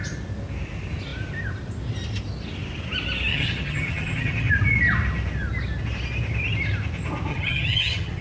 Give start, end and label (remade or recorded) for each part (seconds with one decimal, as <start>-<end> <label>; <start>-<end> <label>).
0.0-3.3 recorded; 3.3-4.5 remade; 4.5-7.3 recorded; 7.3-8.2 remade